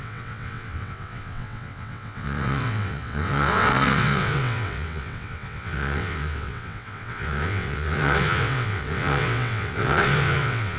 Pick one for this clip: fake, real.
fake